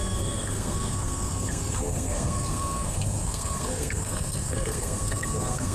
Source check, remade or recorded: remade